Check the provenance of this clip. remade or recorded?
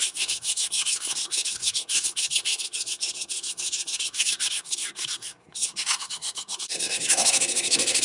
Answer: remade